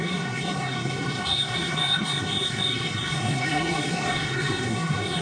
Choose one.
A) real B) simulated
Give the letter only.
B